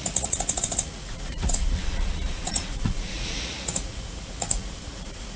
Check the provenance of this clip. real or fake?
fake